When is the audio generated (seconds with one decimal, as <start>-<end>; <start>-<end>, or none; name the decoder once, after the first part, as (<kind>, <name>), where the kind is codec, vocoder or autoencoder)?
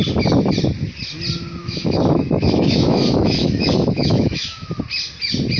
1.6-4.7 (autoencoder, DAC-VAE)